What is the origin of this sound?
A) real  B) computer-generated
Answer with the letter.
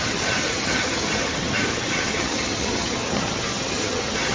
B